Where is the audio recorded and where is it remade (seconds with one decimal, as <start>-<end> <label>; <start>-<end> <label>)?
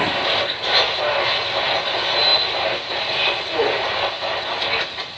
0.0-5.2 recorded